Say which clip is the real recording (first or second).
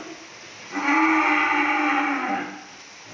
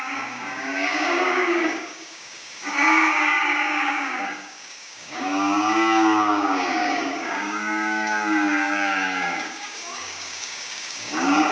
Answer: first